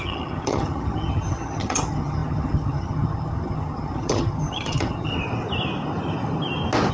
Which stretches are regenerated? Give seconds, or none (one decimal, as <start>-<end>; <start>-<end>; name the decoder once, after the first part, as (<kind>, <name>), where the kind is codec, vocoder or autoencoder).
0.0-5.1 (vocoder, HiFi-GAN)